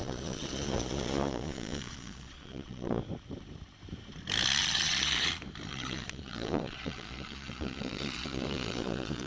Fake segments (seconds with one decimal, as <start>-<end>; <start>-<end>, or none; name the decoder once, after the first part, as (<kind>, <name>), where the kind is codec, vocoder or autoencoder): 0.0-3.0 (vocoder, Vocos); 4.6-5.3; 5.7-9.3